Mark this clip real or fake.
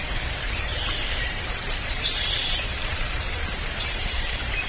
fake